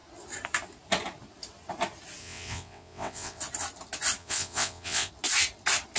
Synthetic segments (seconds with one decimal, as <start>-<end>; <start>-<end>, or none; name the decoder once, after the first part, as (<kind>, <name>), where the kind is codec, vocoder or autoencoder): 2.2-3.4 (vocoder, WaveNeXt); 4.2-5.1